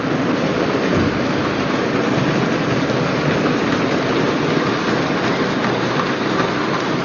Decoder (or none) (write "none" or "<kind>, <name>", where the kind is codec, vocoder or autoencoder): none